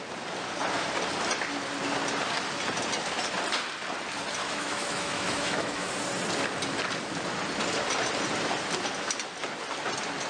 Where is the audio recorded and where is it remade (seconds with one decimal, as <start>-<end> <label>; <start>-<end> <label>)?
0.0-4.4 recorded; 4.4-5.9 remade; 5.9-10.3 recorded

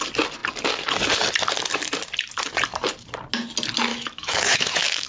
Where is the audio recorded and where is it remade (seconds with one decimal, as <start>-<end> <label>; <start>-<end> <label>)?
0.0-3.9 recorded; 3.9-5.1 remade

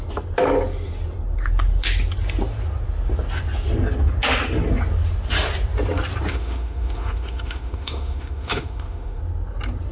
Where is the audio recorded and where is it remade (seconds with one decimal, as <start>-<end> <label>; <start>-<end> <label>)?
0.0-6.3 recorded; 6.3-9.2 remade; 9.2-9.9 recorded

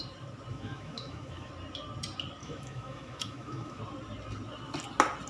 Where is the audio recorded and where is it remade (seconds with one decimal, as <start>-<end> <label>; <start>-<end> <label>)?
0.0-0.5 recorded; 0.5-1.5 remade; 1.5-2.4 recorded; 2.4-3.8 remade; 3.8-5.3 recorded

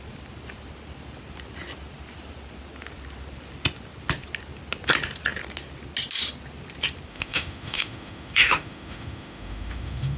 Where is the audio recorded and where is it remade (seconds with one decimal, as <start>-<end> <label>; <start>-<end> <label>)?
0.0-7.1 recorded; 7.1-10.2 remade